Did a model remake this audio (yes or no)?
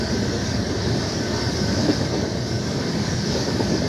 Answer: yes